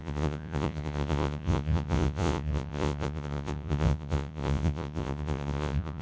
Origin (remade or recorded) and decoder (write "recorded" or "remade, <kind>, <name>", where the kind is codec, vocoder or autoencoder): remade, vocoder, Vocos